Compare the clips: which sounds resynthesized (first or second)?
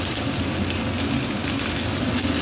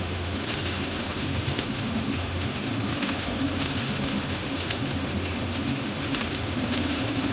second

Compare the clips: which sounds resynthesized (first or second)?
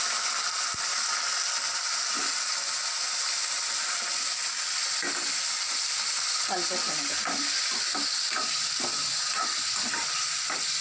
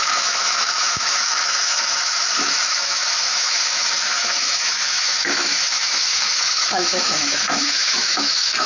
second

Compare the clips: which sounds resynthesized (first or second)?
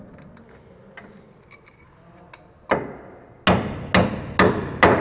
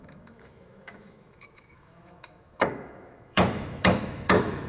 second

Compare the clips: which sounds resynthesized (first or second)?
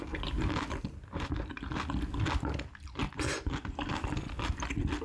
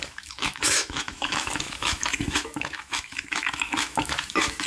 second